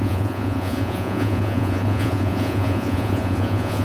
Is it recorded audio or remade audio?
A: remade